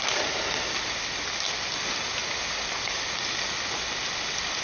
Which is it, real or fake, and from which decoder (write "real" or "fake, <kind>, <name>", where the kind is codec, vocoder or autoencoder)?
real